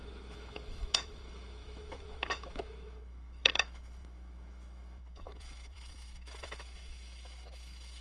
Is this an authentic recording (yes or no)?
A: no